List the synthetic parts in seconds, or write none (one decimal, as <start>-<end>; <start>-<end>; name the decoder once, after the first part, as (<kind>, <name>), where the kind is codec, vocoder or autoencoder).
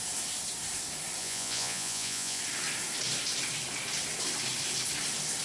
1.2-2.4 (vocoder, Vocos)